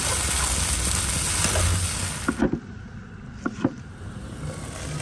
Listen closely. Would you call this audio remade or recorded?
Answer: recorded